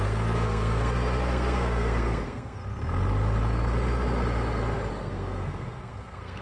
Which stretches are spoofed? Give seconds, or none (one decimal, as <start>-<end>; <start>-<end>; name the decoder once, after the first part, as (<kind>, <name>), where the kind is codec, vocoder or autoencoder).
0.0-2.6 (codec, SNAC); 4.9-6.4